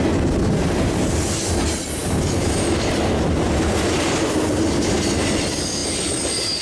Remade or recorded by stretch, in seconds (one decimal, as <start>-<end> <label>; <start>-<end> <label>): 0.0-6.6 recorded